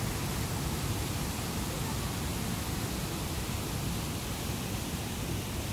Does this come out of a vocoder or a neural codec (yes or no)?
no